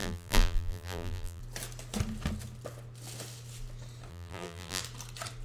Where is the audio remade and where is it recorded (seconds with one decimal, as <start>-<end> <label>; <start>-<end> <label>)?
0.0-1.4 remade; 1.4-4.1 recorded; 4.1-4.8 remade; 4.8-5.4 recorded